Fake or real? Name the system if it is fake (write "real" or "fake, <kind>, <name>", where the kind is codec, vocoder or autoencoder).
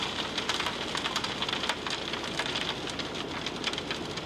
real